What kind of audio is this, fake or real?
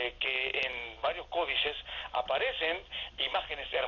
real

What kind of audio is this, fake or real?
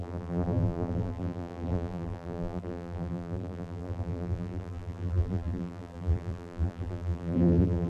fake